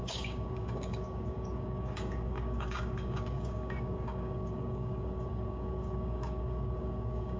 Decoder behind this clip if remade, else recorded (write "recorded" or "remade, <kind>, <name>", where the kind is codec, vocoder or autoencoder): remade, codec, DAC